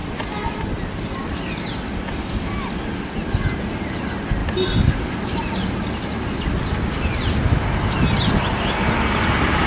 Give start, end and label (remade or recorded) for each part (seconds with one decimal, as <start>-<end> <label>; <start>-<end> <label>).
0.0-9.7 recorded